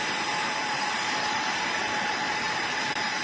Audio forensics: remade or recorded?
remade